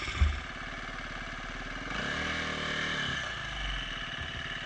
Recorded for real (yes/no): yes